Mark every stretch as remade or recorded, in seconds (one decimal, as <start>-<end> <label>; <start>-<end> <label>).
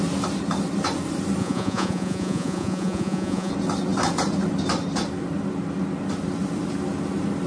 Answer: 0.0-1.4 recorded; 1.4-3.5 remade; 3.5-7.5 recorded